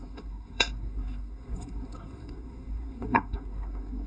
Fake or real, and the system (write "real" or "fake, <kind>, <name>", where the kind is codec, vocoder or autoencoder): fake, codec, SNAC